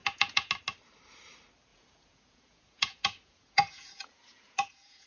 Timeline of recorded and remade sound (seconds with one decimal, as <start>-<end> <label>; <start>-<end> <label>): 0.0-0.5 remade; 0.5-1.7 recorded; 1.7-5.1 remade